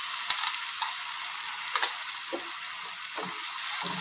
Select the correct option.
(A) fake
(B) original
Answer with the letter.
B